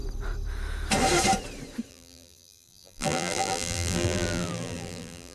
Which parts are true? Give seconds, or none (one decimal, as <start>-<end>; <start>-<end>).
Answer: 0.0-1.9